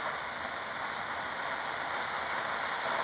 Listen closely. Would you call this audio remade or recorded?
recorded